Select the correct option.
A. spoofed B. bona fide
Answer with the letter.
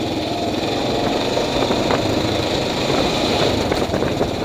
A